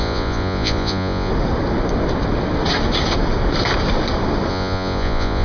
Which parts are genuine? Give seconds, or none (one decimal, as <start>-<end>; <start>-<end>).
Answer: 1.3-4.5